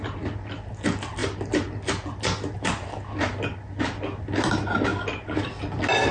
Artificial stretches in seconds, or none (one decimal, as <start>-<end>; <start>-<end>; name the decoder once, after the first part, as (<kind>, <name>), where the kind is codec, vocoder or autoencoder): none